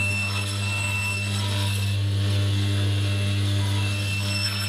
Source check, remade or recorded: remade